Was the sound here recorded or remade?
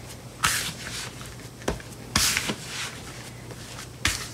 recorded